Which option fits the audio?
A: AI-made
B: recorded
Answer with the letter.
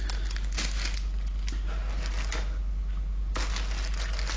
B